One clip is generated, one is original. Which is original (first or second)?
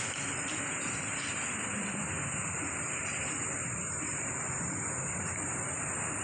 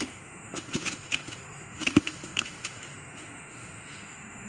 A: first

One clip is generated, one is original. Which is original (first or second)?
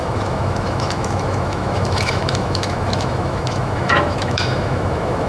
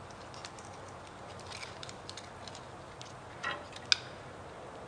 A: second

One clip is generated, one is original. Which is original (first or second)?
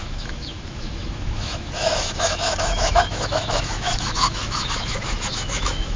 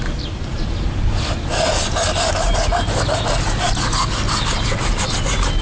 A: second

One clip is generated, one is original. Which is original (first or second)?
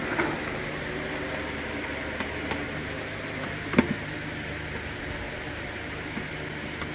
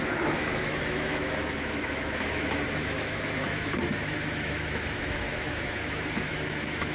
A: first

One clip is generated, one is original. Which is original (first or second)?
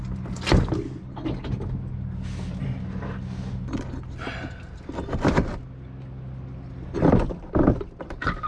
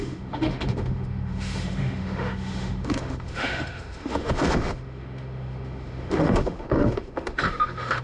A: first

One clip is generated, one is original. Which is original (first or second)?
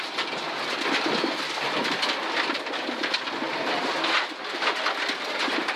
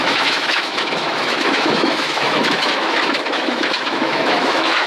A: first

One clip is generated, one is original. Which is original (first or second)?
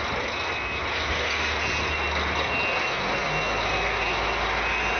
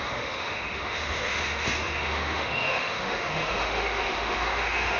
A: first